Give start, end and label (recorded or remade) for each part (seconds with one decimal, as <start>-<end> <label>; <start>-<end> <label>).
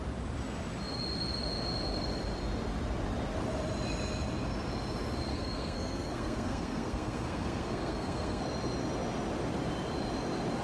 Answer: 0.0-5.3 recorded; 5.3-8.4 remade; 8.4-10.6 recorded